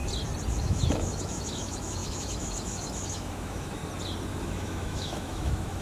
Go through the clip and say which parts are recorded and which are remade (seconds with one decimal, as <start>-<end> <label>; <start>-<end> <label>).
0.0-0.5 recorded; 0.5-3.8 remade; 3.8-4.4 recorded; 4.4-5.8 remade